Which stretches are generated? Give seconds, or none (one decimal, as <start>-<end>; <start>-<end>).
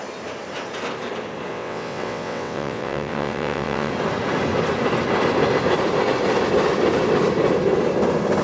1.5-3.9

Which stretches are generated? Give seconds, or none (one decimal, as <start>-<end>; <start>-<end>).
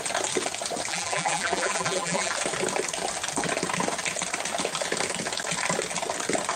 0.9-2.3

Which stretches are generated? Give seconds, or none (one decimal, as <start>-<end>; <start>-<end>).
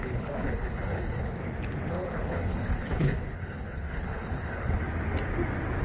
0.0-1.4; 1.9-4.8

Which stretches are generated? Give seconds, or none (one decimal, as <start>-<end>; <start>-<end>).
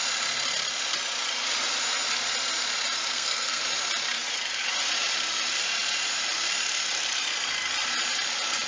3.1-3.6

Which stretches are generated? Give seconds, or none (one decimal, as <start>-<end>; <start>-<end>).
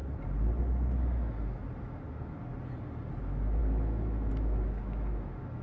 0.6-2.5; 3.2-5.6